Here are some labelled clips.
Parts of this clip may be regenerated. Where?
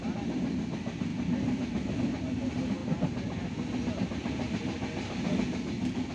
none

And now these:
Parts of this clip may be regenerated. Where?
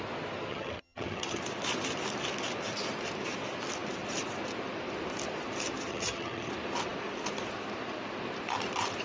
0.5-1.4 (vocoder, HiFi-GAN); 5.9-6.5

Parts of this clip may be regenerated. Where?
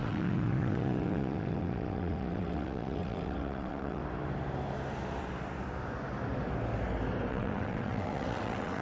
0.0-4.0 (vocoder, WaveNeXt); 7.3-8.8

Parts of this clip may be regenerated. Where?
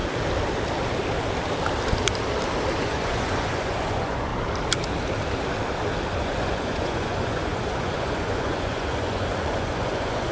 2.8-4.3 (vocoder, Vocos); 6.2-10.3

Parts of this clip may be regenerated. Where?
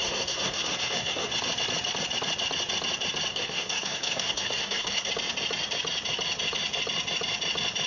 0.0-1.3 (codec, SNAC); 3.3-5.1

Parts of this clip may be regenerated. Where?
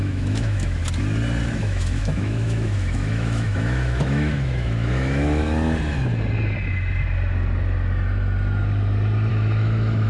0.0-0.8 (autoencoder, DAC-VAE); 1.6-5.4; 9.3-10.1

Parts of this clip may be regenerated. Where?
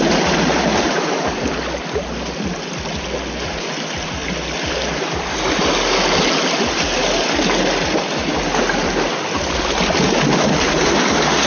none